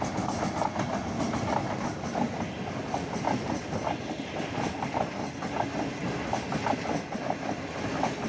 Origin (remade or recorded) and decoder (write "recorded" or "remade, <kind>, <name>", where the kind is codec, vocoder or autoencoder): recorded